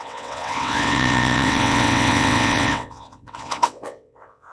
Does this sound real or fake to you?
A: fake